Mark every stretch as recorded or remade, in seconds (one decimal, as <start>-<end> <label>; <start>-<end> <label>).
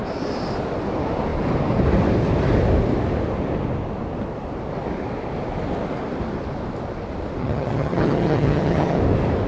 0.0-7.4 recorded; 7.4-9.0 remade; 9.0-9.5 recorded